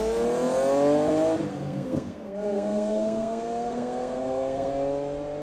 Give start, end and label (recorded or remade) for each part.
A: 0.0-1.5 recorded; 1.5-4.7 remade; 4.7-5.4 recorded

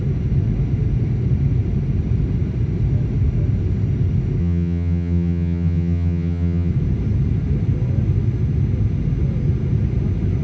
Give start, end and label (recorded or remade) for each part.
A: 0.0-4.4 recorded; 4.4-6.7 remade; 6.7-10.4 recorded

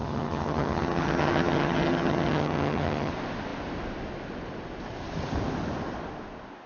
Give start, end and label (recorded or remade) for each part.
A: 0.0-3.1 remade; 3.1-6.7 recorded

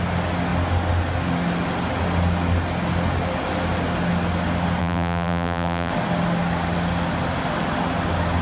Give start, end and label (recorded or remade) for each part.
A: 0.0-4.8 recorded; 4.8-5.9 remade; 5.9-8.4 recorded

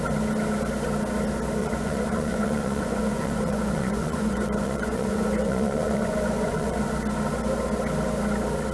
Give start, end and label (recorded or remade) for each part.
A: 0.0-1.6 recorded; 1.6-6.8 remade; 6.8-8.7 recorded